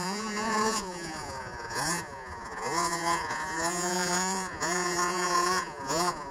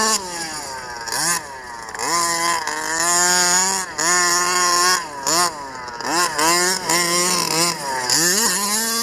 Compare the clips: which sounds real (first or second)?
second